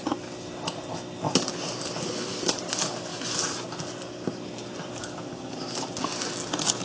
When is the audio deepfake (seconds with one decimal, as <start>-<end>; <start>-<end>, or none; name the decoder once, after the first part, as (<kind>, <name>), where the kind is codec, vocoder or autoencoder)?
none